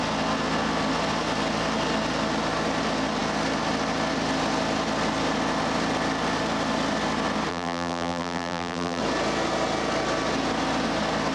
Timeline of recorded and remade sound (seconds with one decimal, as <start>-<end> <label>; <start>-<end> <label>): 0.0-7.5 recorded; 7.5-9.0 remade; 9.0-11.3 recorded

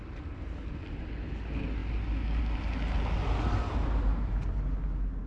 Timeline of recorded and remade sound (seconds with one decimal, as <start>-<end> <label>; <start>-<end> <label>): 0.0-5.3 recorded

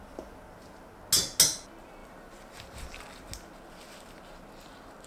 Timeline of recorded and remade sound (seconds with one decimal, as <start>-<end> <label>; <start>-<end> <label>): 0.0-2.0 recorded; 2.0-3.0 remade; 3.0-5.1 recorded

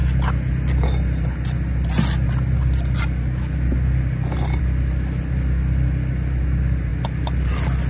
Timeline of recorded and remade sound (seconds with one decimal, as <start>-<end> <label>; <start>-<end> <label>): 0.0-7.9 recorded

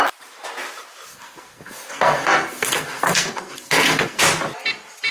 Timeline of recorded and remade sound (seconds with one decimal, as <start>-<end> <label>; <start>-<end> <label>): 0.0-1.1 recorded; 1.1-4.2 remade; 4.2-5.1 recorded

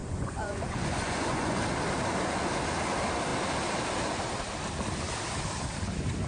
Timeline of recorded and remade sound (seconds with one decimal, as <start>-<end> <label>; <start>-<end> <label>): 0.0-1.6 remade; 1.6-6.3 recorded

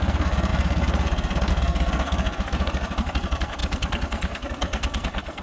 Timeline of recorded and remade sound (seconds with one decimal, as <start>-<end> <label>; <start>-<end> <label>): 0.0-5.4 remade

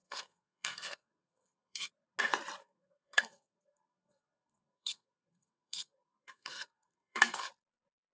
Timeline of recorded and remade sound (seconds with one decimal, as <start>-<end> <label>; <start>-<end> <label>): 0.0-1.9 remade; 1.9-2.6 recorded; 2.6-7.5 remade; 7.5-8.1 recorded